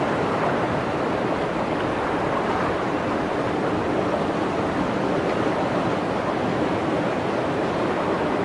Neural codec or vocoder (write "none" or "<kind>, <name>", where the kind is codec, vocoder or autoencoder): none